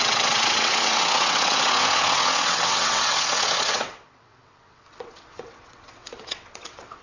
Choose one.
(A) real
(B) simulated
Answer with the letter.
B